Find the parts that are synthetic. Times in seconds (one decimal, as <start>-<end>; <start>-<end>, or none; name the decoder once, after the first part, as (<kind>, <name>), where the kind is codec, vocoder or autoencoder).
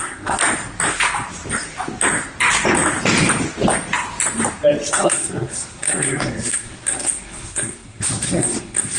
0.0-0.4 (codec, SNAC); 4.9-9.0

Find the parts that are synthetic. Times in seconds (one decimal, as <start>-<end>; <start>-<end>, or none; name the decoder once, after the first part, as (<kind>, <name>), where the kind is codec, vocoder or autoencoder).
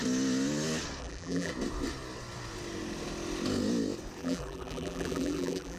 1.0-1.5 (vocoder, BigVGAN v2); 4.2-5.8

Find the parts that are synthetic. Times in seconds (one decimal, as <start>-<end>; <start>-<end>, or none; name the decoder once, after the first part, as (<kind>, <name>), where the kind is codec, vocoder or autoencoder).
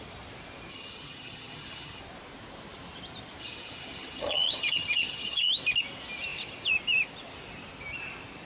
0.7-2.0 (vocoder, HiFi-GAN); 3.4-5.5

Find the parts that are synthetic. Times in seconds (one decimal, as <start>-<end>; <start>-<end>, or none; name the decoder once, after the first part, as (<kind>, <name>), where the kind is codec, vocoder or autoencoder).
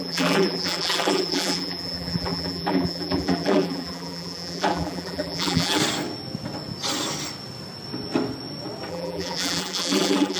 0.0-5.8 (vocoder, BigVGAN v2); 8.9-10.4